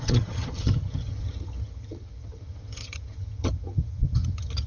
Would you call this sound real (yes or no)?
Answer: no